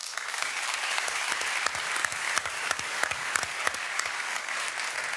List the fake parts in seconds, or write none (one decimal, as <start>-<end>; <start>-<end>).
0.0-1.4; 2.0-4.7